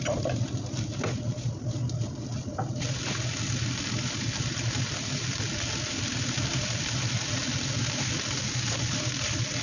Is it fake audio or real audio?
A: real